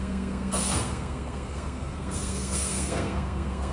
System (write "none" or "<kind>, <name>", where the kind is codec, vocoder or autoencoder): codec, SNAC